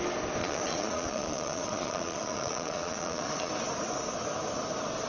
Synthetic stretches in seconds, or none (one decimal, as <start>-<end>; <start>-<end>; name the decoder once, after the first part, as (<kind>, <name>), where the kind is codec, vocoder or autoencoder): 0.4-3.5 (vocoder, Vocos)

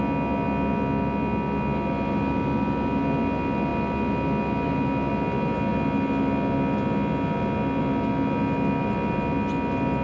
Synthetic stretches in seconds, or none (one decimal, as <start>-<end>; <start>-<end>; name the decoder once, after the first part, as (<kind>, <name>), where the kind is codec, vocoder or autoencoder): none